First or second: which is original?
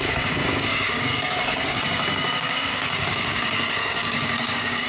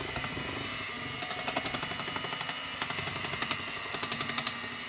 second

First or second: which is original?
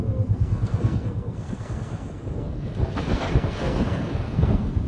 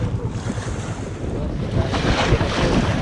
second